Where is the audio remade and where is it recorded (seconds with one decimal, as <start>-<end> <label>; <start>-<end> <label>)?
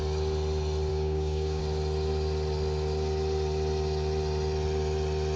0.0-0.9 recorded; 0.9-1.6 remade; 1.6-5.4 recorded